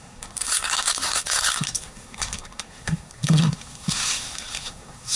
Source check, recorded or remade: remade